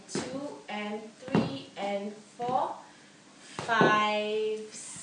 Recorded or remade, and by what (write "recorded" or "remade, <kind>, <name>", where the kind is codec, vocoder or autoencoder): recorded